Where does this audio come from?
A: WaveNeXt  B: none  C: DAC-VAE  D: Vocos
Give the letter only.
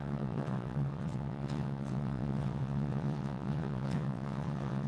A